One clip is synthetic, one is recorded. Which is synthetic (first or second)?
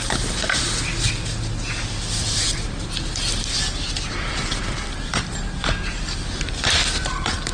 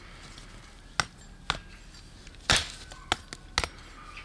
first